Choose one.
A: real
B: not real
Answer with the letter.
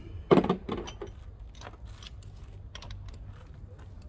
A